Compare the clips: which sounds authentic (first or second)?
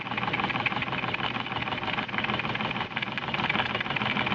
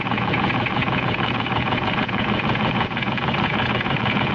first